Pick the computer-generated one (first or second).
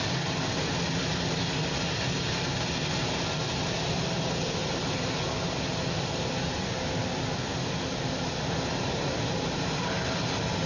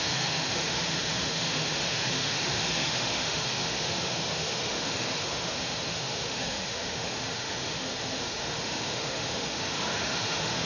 second